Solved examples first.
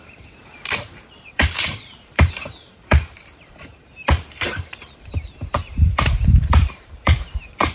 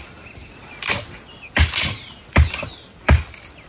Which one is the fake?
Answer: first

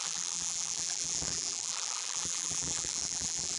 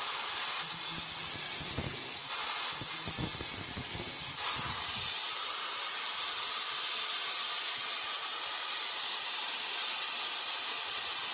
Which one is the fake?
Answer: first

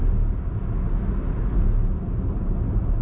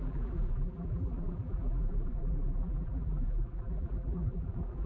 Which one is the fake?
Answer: second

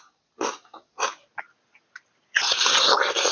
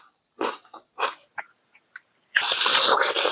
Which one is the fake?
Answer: second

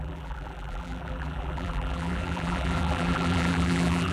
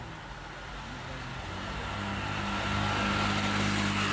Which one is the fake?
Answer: first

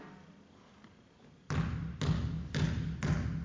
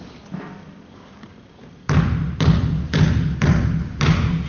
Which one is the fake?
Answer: second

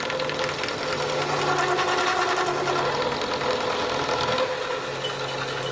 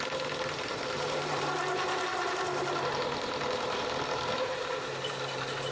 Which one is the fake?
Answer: second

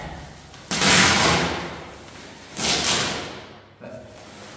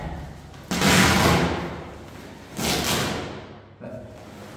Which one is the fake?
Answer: first